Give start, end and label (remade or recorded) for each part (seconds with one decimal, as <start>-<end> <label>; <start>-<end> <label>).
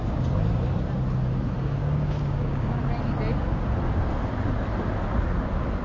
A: 0.0-1.8 recorded; 1.8-2.8 remade; 2.8-5.8 recorded